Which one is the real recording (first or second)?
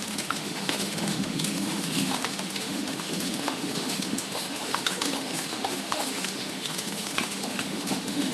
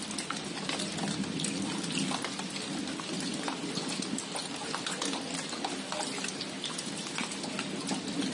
second